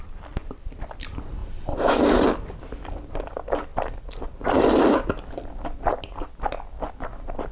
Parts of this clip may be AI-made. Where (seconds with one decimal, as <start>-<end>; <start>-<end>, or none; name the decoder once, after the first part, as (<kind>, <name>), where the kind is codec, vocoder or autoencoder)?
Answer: 0.0-3.7 (vocoder, BigVGAN v2); 6.9-7.5